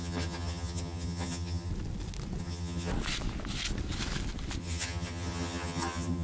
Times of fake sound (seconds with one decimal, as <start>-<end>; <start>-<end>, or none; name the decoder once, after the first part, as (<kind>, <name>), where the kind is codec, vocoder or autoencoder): 0.0-1.7 (vocoder, HiFi-GAN); 2.4-2.9; 4.6-6.2